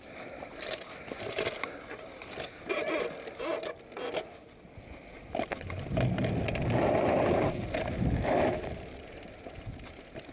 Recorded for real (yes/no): yes